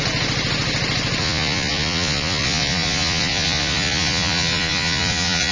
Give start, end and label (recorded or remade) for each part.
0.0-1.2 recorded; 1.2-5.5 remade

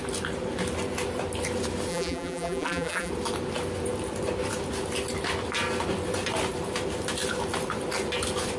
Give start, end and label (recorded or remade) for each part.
0.0-1.9 recorded; 1.9-3.1 remade; 3.1-8.6 recorded

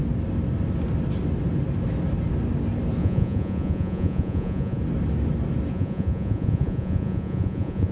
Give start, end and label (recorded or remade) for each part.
0.0-3.0 recorded; 3.0-4.8 remade; 4.8-5.7 recorded; 5.7-7.9 remade